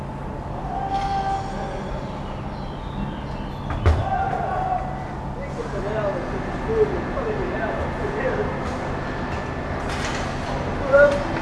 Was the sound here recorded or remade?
recorded